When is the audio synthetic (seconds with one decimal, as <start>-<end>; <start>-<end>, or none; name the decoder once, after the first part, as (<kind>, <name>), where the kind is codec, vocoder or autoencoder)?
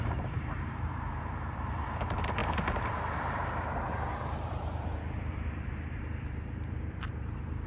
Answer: 0.0-7.7 (vocoder, BigVGAN v2)